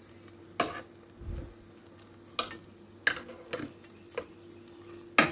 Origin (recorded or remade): recorded